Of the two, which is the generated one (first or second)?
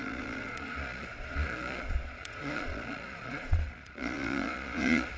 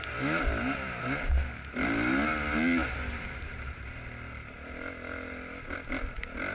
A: first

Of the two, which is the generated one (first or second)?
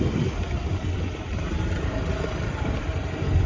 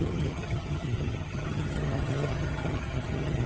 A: second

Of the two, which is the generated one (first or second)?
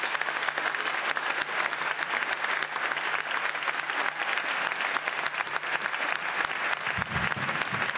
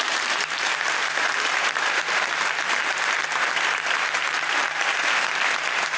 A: second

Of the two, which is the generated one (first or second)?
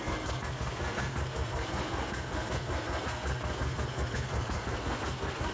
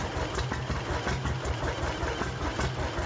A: first